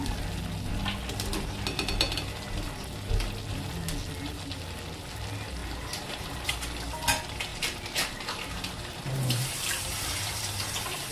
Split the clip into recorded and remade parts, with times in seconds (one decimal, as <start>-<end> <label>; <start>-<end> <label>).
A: 0.0-5.6 recorded; 5.6-6.5 remade; 6.5-7.5 recorded; 7.5-10.4 remade; 10.4-11.1 recorded